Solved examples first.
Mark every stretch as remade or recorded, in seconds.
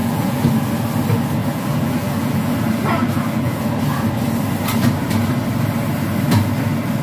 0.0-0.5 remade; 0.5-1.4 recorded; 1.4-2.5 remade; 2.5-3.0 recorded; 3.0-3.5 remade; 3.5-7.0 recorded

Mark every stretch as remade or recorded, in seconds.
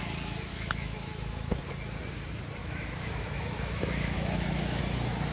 0.0-0.5 recorded; 0.5-1.6 remade; 1.6-2.6 recorded; 2.6-4.8 remade; 4.8-5.3 recorded